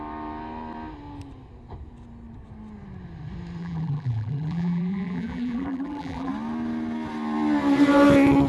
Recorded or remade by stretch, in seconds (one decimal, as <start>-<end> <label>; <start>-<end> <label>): 0.0-3.6 recorded; 3.6-6.3 remade; 6.3-8.5 recorded